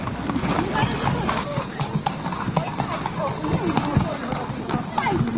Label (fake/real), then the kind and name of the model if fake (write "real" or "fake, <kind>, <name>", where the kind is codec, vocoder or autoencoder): real